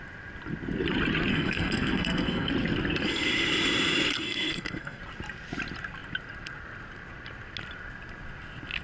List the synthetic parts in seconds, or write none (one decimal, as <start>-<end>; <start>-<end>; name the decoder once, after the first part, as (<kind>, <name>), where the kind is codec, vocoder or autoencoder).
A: 1.3-2.5 (codec, SNAC); 4.1-5.0